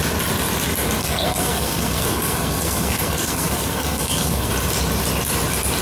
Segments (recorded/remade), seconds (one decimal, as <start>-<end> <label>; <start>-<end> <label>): 0.0-1.0 recorded; 1.0-4.5 remade; 4.5-5.8 recorded